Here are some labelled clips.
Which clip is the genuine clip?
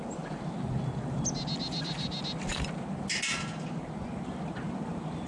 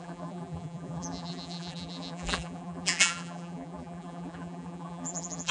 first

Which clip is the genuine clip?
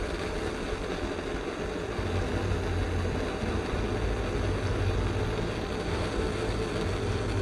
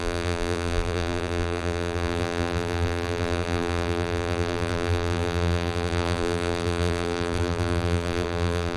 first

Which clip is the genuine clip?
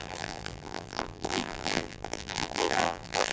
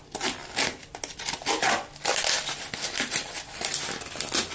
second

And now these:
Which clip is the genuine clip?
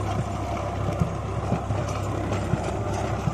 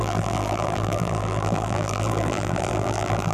first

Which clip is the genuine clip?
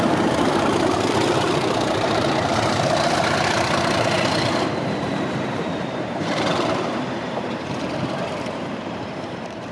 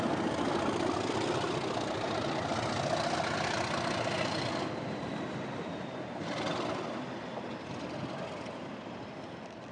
second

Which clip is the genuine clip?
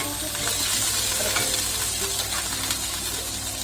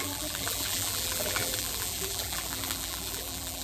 first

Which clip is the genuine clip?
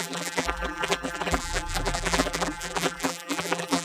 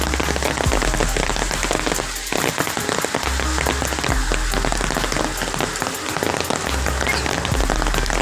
second